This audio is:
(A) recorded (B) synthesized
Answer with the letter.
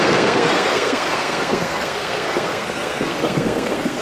B